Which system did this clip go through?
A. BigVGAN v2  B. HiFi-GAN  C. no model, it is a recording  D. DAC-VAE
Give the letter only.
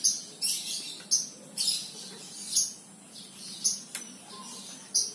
C